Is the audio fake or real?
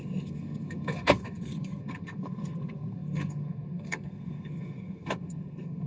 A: fake